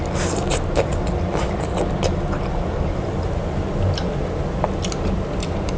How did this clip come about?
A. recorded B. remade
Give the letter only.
A